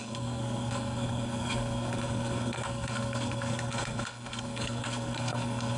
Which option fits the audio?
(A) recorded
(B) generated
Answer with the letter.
B